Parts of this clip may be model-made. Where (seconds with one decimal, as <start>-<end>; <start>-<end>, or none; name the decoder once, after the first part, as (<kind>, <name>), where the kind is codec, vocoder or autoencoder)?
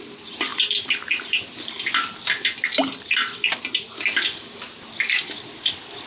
0.5-1.9 (vocoder, BigVGAN v2)